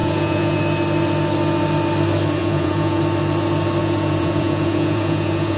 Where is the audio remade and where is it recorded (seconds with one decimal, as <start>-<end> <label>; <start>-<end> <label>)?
0.0-0.6 remade; 0.6-2.4 recorded; 2.4-3.0 remade; 3.0-3.8 recorded; 3.8-5.6 remade